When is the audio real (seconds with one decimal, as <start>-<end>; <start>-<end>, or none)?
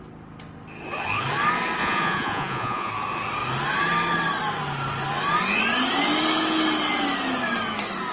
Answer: 0.0-1.8; 2.9-8.1